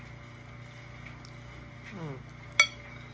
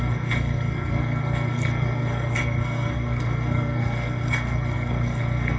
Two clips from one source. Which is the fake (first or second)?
second